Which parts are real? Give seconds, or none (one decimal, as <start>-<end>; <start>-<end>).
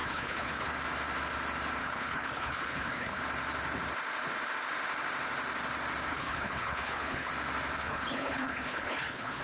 0.7-1.8; 3.2-6.1; 7.3-7.8